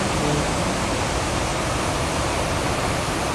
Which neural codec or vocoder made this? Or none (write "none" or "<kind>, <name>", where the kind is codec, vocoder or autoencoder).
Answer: none